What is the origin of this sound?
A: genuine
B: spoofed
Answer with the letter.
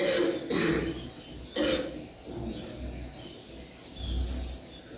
A